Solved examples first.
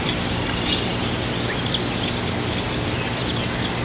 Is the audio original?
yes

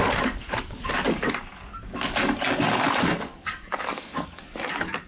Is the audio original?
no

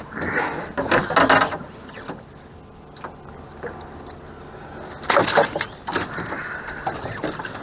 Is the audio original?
yes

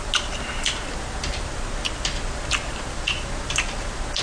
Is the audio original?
yes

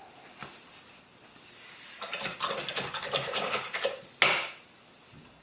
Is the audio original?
yes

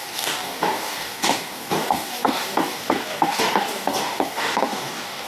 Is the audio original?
no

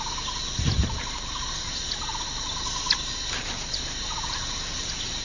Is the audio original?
yes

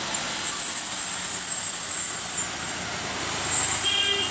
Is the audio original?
yes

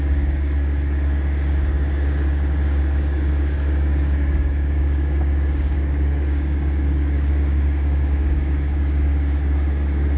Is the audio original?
no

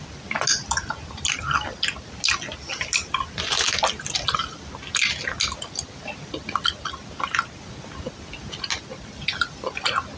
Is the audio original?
yes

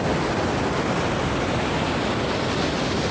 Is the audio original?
yes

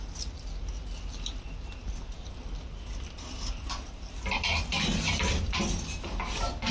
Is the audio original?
yes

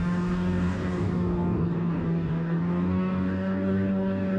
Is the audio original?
no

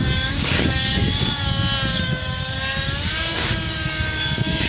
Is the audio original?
no